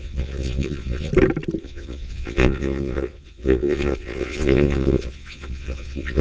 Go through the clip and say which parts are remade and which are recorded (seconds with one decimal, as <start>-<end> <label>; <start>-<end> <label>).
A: 0.0-1.1 remade; 1.1-1.6 recorded; 1.6-6.2 remade